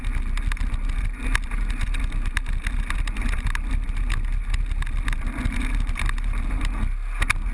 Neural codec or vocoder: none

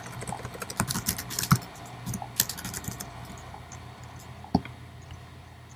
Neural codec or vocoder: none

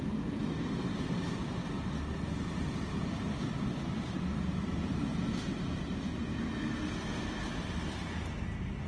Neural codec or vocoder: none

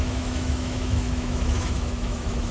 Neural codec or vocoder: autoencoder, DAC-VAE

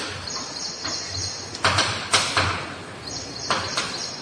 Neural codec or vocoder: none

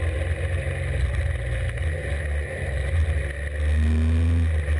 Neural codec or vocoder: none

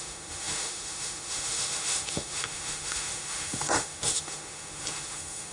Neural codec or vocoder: autoencoder, DAC-VAE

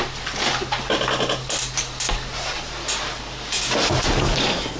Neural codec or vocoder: none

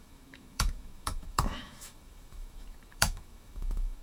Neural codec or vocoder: autoencoder, DAC-VAE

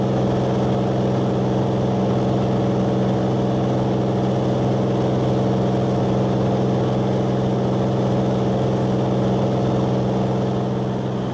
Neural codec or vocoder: none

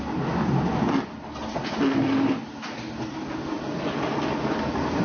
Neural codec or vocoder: none